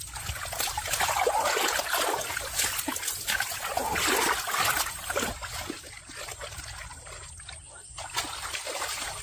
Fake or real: real